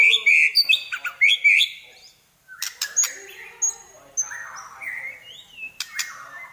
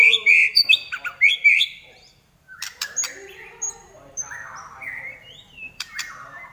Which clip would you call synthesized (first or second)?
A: second